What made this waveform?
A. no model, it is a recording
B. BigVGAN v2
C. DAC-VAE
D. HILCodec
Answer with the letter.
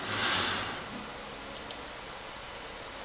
A